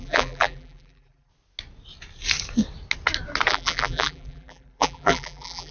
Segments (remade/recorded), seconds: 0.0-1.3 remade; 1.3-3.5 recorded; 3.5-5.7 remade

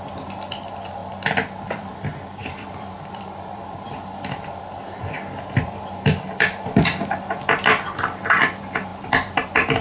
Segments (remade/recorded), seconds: 0.0-1.0 recorded; 1.0-1.9 remade; 1.9-2.4 recorded; 2.4-7.5 remade; 7.5-8.9 recorded; 8.9-9.8 remade

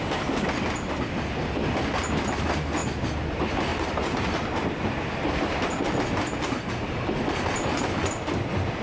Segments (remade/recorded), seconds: 0.0-3.7 recorded; 3.7-4.2 remade; 4.2-8.8 recorded